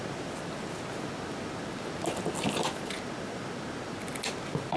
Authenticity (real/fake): real